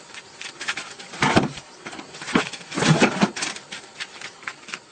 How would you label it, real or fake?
real